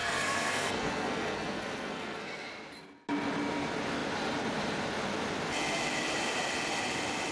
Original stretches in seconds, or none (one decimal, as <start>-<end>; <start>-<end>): 2.5-7.3